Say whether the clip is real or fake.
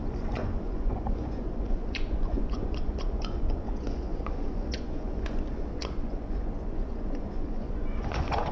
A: fake